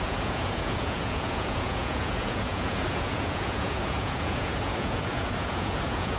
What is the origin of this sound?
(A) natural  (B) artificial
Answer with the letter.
B